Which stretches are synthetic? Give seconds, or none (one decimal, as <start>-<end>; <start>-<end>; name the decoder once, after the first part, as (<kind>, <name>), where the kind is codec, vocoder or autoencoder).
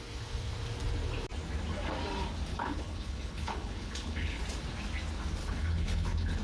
2.5-4.4 (codec, HILCodec); 5.4-6.4